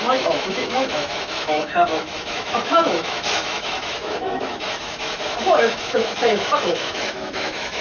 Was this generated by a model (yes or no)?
yes